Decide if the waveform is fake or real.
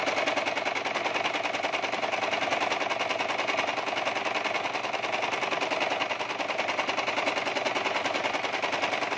real